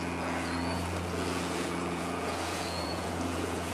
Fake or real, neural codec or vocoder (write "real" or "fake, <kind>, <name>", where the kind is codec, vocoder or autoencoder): fake, vocoder, Vocos